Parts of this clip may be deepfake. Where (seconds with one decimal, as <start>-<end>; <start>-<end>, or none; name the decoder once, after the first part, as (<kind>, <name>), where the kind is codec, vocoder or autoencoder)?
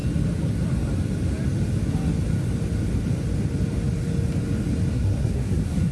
4.9-5.9 (codec, SNAC)